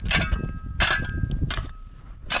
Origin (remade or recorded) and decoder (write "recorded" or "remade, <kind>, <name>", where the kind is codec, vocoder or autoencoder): recorded